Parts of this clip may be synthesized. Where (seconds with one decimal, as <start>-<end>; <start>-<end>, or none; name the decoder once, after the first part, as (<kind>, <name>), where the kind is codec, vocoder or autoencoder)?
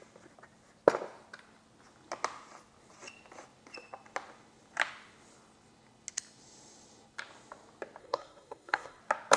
8.0-9.0 (codec, SNAC)